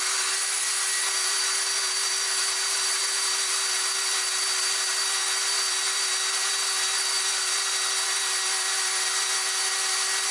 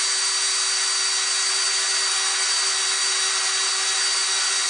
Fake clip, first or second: first